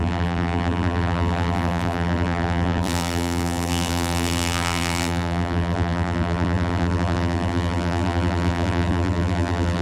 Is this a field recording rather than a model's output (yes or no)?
no